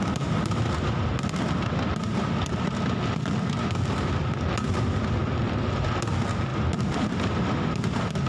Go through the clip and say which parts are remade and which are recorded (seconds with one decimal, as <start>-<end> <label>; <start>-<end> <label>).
0.0-8.3 recorded